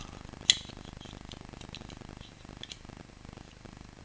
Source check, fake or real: real